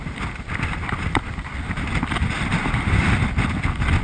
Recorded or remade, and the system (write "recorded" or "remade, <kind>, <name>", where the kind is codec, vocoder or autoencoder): recorded